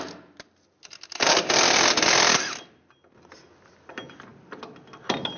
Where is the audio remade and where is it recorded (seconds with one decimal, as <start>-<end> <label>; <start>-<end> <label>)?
0.0-5.4 recorded